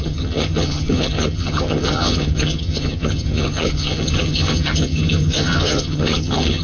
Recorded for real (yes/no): no